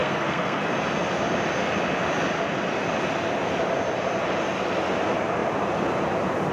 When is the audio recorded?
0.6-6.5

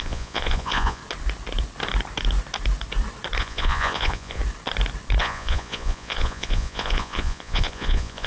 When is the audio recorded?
1.0-3.4; 4.4-5.2

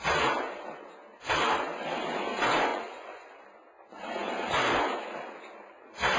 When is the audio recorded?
0.0-2.7; 3.3-6.2

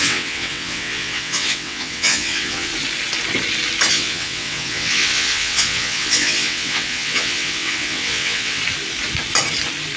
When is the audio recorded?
2.7-3.9; 8.6-10.0

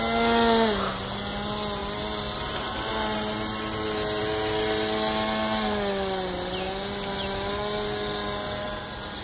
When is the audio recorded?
0.0-9.2

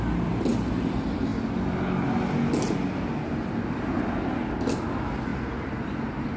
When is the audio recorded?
0.0-6.4